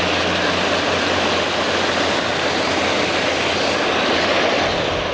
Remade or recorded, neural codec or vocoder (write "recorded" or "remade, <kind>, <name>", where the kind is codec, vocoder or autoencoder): recorded